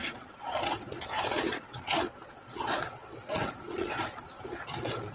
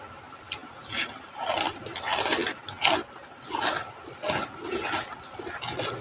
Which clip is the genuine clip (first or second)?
second